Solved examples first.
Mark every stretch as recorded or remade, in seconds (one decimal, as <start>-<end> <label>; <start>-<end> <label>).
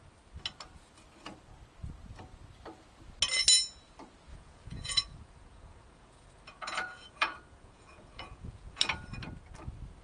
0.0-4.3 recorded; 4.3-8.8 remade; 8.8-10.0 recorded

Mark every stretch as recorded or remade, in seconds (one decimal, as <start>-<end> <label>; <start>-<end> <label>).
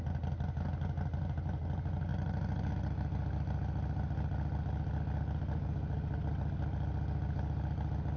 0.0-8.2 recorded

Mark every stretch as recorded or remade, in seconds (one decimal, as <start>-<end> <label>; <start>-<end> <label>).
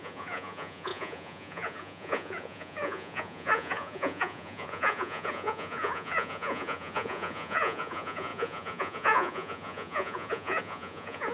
0.0-11.3 remade